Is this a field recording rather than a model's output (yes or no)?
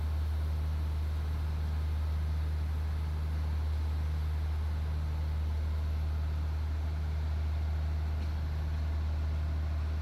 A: yes